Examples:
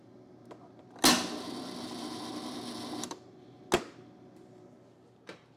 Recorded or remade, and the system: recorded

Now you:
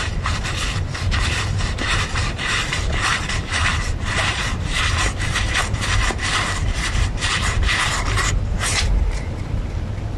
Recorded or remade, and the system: remade, vocoder, BigVGAN v2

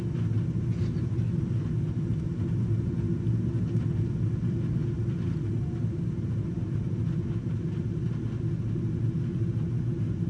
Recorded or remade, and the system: recorded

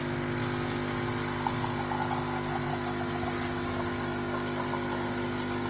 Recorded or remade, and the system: recorded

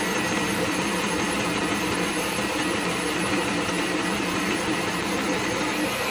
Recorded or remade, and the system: remade, vocoder, BigVGAN v2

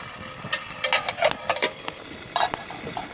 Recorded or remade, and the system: recorded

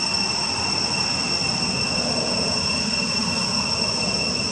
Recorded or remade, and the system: recorded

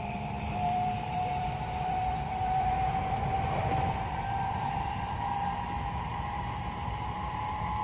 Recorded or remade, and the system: remade, vocoder, BigVGAN v2